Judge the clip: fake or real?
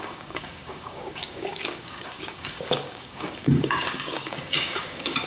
fake